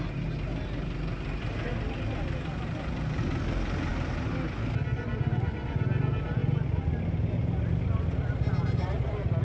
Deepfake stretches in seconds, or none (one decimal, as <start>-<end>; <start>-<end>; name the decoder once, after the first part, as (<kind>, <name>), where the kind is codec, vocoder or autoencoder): none